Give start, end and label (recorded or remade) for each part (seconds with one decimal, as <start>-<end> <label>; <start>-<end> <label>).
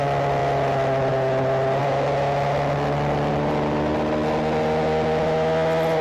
0.0-6.0 recorded